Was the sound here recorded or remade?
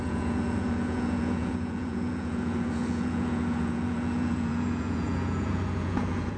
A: remade